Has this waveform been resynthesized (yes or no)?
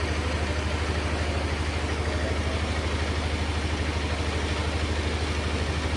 no